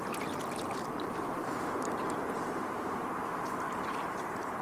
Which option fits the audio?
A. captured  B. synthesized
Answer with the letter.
B